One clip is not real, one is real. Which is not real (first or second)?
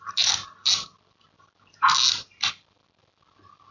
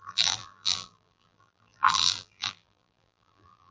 second